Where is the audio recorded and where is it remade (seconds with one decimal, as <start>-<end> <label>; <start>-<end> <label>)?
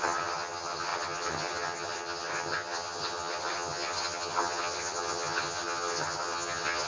0.0-6.9 remade